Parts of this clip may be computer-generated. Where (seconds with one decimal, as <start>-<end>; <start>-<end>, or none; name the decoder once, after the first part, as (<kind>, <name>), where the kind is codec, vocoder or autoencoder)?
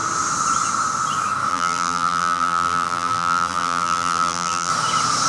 1.5-4.7 (vocoder, BigVGAN v2)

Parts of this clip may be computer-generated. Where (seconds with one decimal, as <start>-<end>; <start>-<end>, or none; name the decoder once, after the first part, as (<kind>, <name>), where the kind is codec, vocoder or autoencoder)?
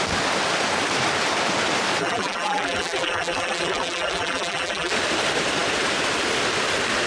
2.0-4.9 (vocoder, BigVGAN v2)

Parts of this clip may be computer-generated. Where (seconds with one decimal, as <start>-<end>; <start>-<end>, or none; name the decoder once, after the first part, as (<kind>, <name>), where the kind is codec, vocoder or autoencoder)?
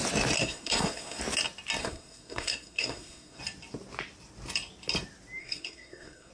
0.4-1.2 (codec, SNAC); 1.8-3.4; 5.4-6.3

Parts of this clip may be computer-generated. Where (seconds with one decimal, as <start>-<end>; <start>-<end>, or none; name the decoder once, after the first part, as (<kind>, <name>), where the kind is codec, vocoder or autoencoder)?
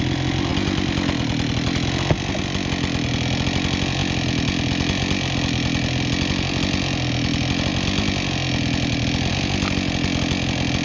none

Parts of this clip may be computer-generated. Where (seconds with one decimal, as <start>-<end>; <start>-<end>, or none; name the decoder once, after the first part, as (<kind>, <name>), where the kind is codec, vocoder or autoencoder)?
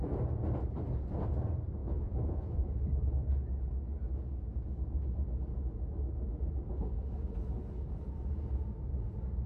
1.8-2.6 (vocoder, Vocos)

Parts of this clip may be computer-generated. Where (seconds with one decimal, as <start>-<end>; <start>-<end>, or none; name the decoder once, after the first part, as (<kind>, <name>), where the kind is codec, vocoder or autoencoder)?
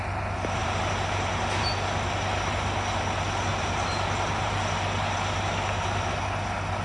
0.6-1.3 (vocoder, BigVGAN v2); 3.5-4.6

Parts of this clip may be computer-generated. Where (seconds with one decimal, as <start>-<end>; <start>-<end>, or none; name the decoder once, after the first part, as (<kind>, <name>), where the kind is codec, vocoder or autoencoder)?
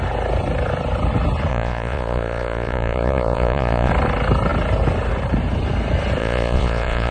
1.5-3.9 (vocoder, Vocos); 6.2-7.1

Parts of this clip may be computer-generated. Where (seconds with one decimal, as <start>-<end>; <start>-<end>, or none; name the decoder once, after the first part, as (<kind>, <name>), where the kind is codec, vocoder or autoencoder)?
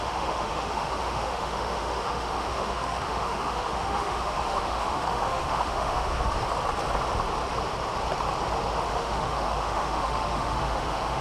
0.0-6.4 (autoencoder, DAC-VAE); 8.9-11.2